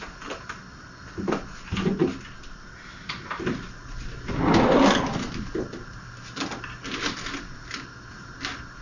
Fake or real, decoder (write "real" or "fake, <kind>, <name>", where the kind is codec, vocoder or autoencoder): real